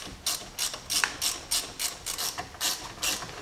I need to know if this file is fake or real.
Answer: real